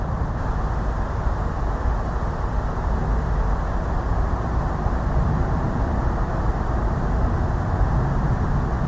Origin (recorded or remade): recorded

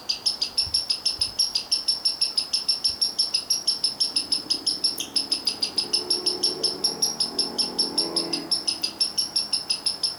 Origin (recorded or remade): recorded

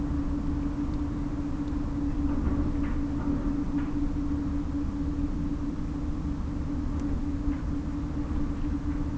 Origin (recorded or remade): recorded